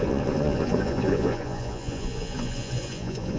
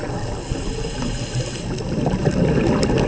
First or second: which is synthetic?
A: first